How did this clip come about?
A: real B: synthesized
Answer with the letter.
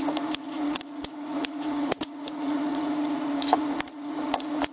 B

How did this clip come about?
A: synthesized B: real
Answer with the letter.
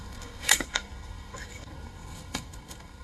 A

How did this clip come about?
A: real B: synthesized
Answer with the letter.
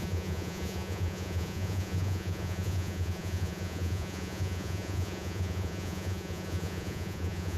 B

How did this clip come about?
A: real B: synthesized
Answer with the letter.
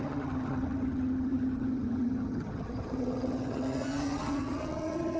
B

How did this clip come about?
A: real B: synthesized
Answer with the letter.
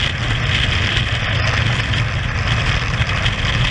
A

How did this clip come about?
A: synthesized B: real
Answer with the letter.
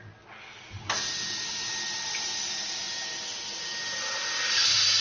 B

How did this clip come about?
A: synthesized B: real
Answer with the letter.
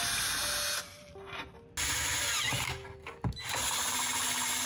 B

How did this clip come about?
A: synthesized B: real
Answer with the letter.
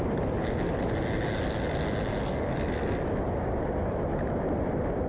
B